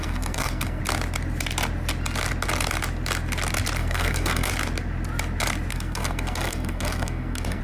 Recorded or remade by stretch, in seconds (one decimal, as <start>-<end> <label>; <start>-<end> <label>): 0.0-0.8 remade; 0.8-3.8 recorded; 3.8-4.5 remade; 4.5-5.7 recorded; 5.7-7.6 remade